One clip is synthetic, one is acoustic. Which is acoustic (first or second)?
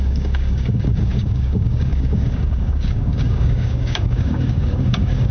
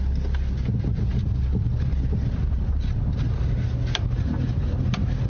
second